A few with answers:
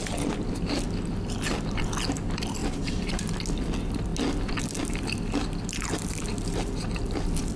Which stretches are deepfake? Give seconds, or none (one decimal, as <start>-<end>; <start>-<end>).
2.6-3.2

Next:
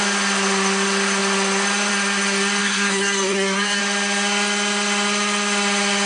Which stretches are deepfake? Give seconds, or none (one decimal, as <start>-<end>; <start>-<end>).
2.6-3.8

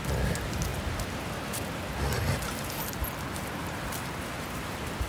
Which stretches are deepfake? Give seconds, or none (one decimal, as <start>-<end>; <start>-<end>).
0.7-3.8

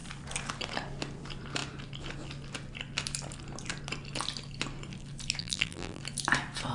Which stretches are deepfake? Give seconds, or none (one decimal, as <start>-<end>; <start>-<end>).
5.4-6.0

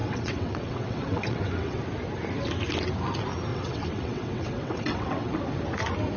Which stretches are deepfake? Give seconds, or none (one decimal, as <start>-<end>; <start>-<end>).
0.0-1.8; 3.5-5.4

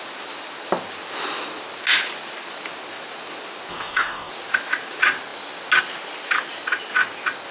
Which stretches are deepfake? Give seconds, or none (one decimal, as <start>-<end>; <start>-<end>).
3.7-4.3